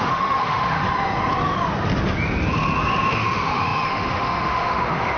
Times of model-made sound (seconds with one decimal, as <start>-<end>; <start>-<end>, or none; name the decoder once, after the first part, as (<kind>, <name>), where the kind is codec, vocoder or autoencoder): 0.0-0.8 (autoencoder, DAC-VAE); 3.1-5.2